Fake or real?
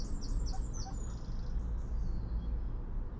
real